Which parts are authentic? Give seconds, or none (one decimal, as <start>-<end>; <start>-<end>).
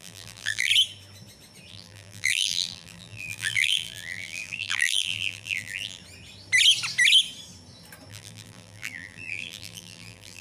0.7-1.7; 6.0-8.1